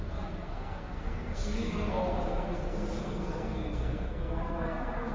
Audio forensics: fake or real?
fake